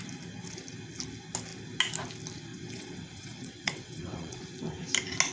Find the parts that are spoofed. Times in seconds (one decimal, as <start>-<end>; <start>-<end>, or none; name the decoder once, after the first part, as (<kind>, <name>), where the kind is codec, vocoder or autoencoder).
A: 2.5-4.4 (vocoder, WaveNeXt)